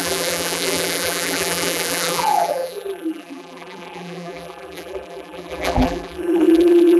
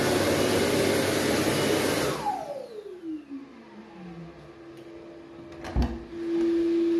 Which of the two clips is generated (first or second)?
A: first